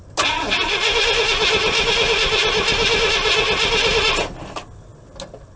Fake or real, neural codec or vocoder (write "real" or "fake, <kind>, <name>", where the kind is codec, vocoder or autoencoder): real